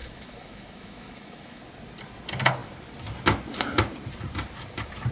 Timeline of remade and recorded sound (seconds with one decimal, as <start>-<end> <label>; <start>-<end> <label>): 0.0-1.6 remade; 1.6-5.1 recorded